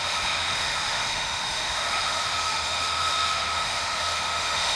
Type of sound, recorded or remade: remade